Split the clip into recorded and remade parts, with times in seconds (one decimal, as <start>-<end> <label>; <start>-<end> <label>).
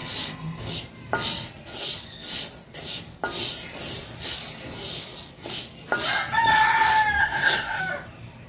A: 0.0-7.2 recorded; 7.2-7.8 remade; 7.8-8.5 recorded